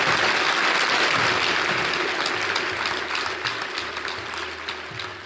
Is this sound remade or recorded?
recorded